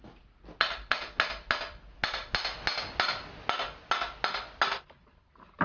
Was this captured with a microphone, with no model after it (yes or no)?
yes